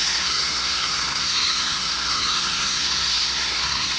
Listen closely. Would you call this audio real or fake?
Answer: fake